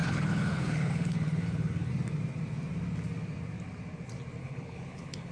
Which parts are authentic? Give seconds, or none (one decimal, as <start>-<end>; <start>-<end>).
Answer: 1.9-4.4